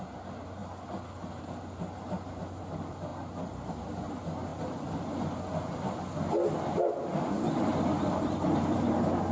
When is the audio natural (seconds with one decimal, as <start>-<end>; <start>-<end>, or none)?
0.0-9.3